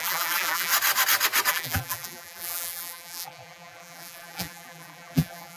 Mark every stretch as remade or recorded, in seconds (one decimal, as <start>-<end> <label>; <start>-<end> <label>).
0.0-0.7 remade; 0.7-1.5 recorded; 1.5-5.6 remade